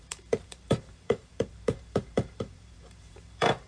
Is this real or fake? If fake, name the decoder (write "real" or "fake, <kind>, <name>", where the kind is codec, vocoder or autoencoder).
fake, vocoder, BigVGAN v2